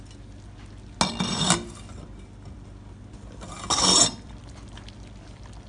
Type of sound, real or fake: real